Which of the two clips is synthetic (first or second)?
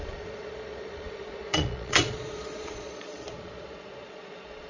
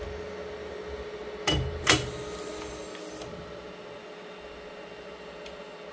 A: first